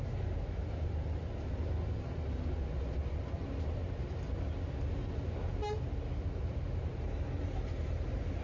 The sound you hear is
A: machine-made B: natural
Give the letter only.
B